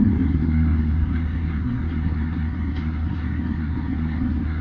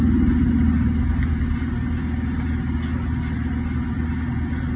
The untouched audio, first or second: second